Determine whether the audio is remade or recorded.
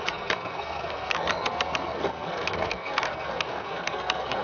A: remade